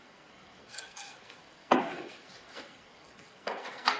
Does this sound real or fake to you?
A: fake